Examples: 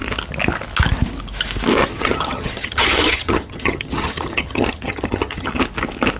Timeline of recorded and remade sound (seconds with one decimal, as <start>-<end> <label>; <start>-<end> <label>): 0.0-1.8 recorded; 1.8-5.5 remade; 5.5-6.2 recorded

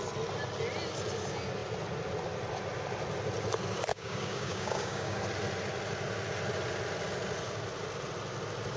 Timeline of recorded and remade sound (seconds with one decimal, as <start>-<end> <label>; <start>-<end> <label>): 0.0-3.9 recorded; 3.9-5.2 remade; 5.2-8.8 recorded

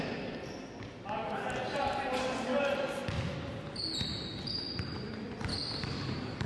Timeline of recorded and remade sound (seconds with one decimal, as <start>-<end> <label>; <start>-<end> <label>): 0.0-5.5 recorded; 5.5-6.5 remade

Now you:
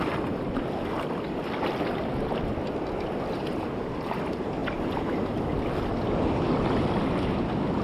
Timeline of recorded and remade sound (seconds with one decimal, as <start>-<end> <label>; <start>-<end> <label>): 0.0-7.8 recorded